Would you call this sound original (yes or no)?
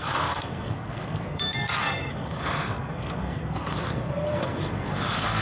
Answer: no